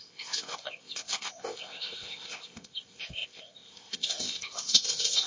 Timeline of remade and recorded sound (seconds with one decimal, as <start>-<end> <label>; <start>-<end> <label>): 0.0-5.3 remade